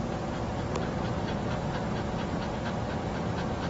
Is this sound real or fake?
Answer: real